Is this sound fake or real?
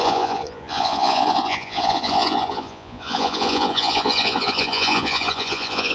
fake